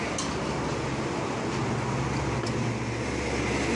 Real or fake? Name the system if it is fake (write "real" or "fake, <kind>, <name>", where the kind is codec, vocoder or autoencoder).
real